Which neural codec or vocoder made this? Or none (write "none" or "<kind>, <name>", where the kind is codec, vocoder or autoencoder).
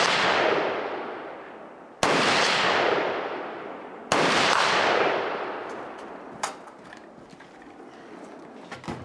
vocoder, BigVGAN v2